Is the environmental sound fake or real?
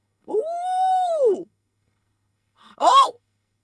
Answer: fake